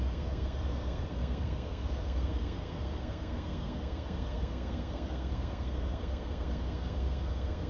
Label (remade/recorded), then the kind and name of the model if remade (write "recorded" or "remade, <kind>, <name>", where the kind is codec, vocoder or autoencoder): remade, codec, SNAC